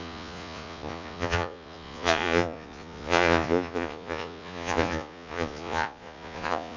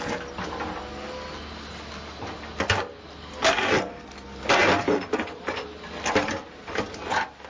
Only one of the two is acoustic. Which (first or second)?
second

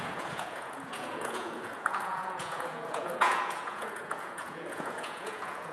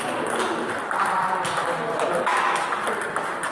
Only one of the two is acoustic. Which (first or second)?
second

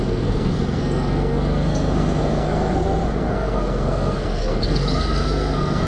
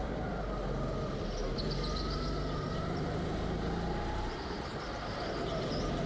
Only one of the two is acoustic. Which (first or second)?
second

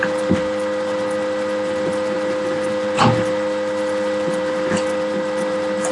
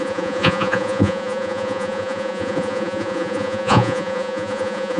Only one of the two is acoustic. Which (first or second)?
first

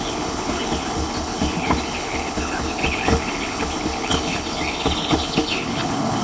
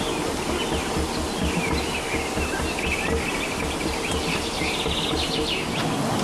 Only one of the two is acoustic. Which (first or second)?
second